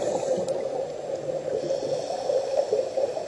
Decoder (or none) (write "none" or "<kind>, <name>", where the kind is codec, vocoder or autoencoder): none